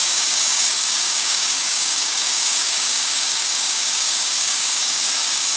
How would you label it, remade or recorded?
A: remade